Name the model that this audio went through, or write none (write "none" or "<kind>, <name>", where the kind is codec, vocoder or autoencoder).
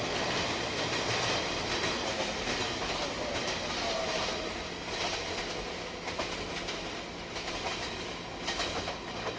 none